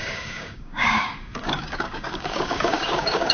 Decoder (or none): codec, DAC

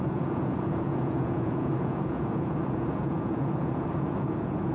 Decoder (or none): vocoder, Vocos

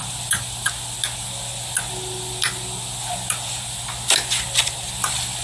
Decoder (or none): none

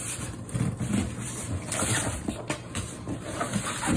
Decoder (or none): none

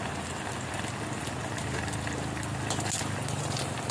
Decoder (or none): none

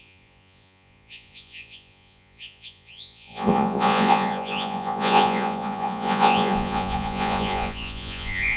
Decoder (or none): vocoder, Vocos